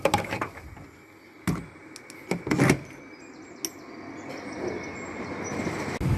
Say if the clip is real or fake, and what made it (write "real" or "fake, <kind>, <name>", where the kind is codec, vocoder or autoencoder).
real